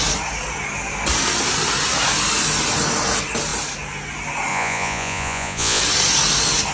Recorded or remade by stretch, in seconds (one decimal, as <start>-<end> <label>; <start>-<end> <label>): 0.0-4.5 recorded; 4.5-5.8 remade; 5.8-6.7 recorded